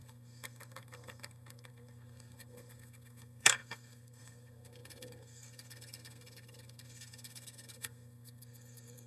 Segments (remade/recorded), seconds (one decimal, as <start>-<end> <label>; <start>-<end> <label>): 0.0-9.1 remade